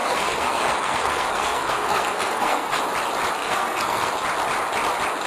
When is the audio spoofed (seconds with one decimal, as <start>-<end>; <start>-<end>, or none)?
0.0-2.8; 3.4-4.1